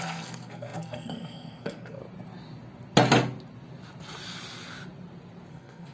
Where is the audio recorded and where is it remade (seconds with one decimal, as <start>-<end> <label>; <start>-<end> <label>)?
0.0-2.0 remade; 2.0-5.5 recorded; 5.5-5.9 remade